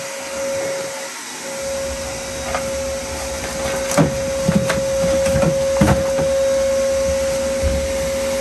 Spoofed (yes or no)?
no